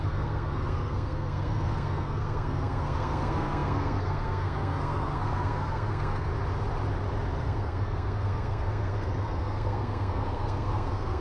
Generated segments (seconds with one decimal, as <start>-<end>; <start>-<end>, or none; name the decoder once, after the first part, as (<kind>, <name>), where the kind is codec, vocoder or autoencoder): 0.0-6.3 (codec, SNAC); 7.4-11.2